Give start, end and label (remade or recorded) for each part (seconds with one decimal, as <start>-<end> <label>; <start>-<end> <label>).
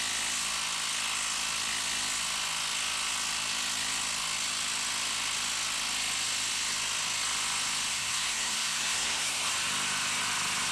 0.0-7.9 recorded; 7.9-9.5 remade; 9.5-10.7 recorded